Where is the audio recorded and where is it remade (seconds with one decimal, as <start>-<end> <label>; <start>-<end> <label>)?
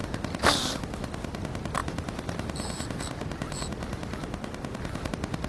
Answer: 0.0-0.8 remade; 0.8-5.5 recorded